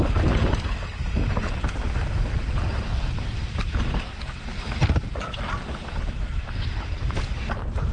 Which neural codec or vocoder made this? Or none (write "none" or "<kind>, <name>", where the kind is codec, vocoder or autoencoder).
none